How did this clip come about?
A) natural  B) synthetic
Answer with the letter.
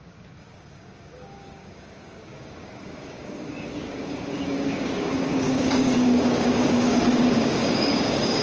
B